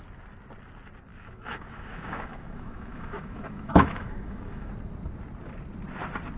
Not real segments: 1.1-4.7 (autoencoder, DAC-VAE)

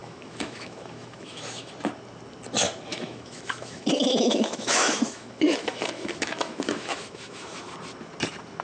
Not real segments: 0.0-1.7 (autoencoder, DAC-VAE); 2.9-7.7

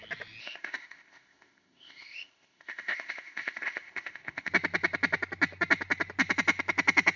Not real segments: 0.4-4.5 (codec, ZipCodec)

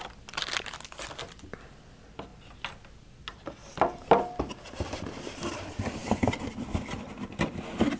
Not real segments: none

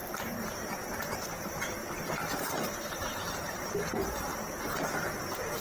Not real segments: 0.0-4.3 (vocoder, BigVGAN v2); 5.0-5.6